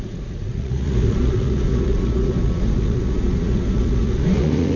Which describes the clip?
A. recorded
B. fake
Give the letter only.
B